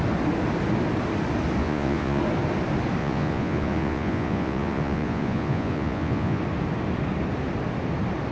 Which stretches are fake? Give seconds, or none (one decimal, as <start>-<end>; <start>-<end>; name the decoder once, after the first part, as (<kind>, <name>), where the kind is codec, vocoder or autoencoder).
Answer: 1.6-2.2 (vocoder, Vocos); 3.0-6.4